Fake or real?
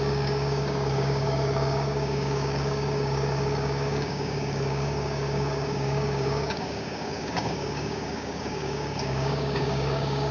fake